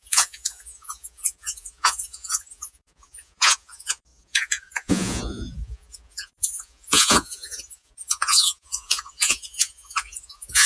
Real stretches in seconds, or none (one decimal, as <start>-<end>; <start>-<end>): none